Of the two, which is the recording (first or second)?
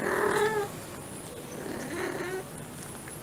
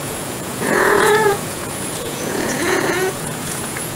first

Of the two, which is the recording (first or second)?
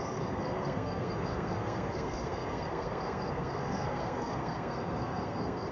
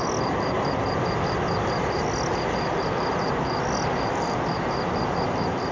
second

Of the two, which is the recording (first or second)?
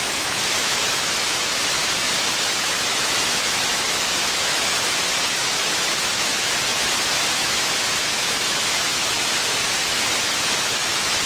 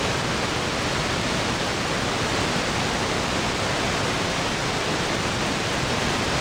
second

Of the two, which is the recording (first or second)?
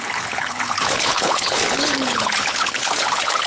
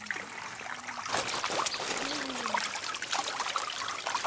second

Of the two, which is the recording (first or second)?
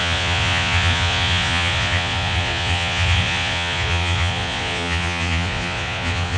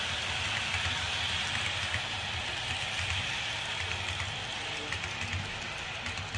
second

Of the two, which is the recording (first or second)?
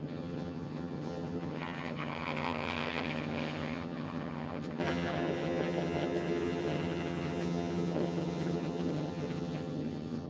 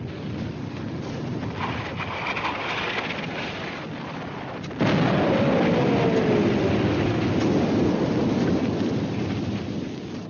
second